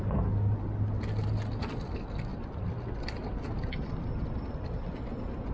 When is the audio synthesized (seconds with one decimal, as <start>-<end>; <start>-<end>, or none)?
none